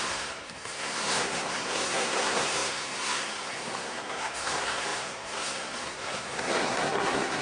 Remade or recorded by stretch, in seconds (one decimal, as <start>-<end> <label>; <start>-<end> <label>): 0.0-7.4 remade